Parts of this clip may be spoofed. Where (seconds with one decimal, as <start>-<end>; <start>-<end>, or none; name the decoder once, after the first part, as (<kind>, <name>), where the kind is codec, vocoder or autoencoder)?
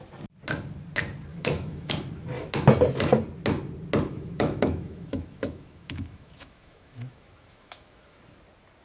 1.3-1.9 (autoencoder, DAC-VAE); 4.1-8.2